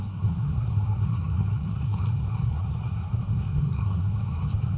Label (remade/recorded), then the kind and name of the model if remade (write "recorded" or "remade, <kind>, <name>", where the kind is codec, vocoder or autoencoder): remade, codec, SNAC